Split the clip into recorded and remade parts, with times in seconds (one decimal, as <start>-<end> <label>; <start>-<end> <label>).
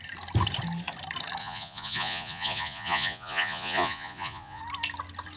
0.0-1.4 recorded; 1.4-4.6 remade; 4.6-5.4 recorded